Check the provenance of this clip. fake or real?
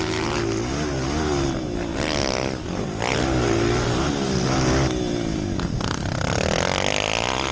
real